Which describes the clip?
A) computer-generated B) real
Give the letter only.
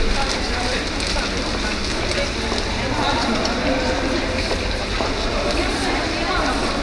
B